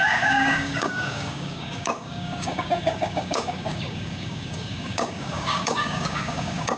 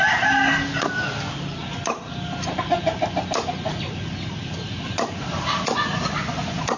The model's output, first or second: first